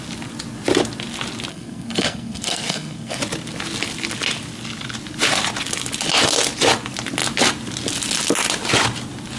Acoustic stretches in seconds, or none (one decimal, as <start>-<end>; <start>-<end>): 0.0-1.5; 3.2-9.4